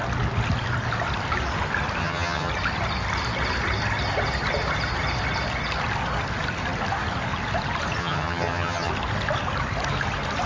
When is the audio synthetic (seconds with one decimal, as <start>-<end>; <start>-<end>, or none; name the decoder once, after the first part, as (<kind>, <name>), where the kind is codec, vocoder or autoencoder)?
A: 2.0-2.5 (vocoder, HiFi-GAN); 8.0-8.9

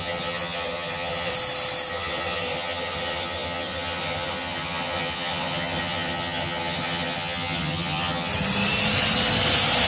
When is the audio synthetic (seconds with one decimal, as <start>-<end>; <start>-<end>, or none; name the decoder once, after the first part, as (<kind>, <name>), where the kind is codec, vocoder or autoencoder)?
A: 0.0-1.3 (vocoder, HiFi-GAN); 1.9-8.3

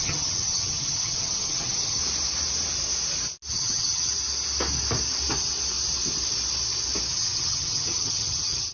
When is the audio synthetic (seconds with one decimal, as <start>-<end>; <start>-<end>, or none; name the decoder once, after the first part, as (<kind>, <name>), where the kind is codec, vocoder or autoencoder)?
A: 0.0-2.0 (vocoder, HiFi-GAN); 3.5-4.1; 7.1-8.7